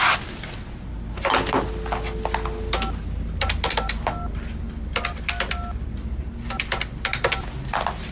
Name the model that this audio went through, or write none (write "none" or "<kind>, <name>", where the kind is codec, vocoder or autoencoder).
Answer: none